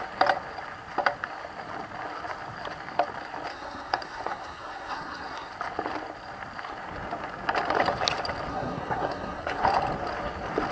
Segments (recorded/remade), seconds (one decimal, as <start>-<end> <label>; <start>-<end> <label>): 0.0-3.5 recorded; 3.5-5.5 remade; 5.5-8.5 recorded; 8.5-9.6 remade; 9.6-10.7 recorded